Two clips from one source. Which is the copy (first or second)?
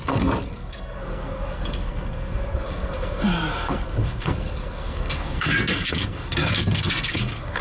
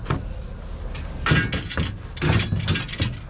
first